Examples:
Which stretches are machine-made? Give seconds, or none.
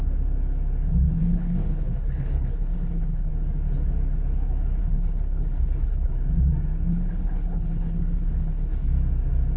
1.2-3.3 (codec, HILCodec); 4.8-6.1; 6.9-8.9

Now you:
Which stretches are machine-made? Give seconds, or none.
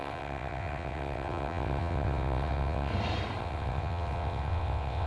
0.0-2.9 (vocoder, WaveNeXt); 3.4-5.1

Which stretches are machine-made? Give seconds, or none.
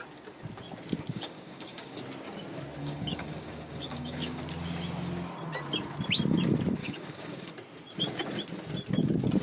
1.1-2.0 (codec, DAC); 2.8-4.4; 6.8-7.5